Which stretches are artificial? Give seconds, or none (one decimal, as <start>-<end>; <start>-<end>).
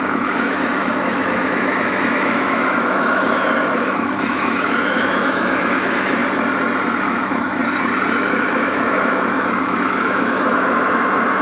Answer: 0.0-6.2; 7.0-7.6; 8.4-11.4